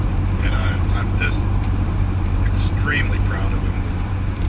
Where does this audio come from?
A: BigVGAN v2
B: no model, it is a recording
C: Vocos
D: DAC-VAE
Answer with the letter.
A